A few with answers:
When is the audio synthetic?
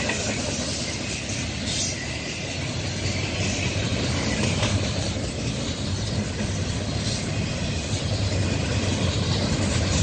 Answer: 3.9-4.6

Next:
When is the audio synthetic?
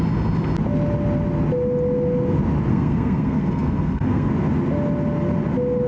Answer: 2.7-4.3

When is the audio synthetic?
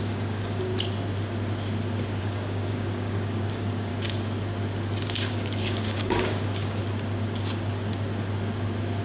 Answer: 0.0-0.7; 2.2-3.9; 5.3-6.8